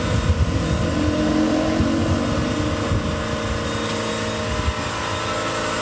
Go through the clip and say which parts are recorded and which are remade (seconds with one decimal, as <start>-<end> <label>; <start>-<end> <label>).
0.0-5.8 recorded